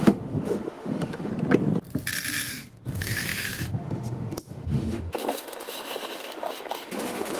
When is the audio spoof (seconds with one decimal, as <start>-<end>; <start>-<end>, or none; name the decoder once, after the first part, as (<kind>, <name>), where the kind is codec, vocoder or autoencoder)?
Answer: 0.0-1.3 (autoencoder, DAC-VAE); 2.5-7.4